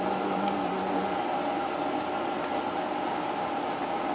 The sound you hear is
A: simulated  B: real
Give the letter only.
B